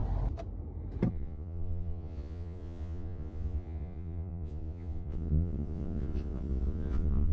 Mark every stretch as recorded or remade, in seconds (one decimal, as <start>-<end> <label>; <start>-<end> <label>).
0.0-1.1 recorded; 1.1-7.3 remade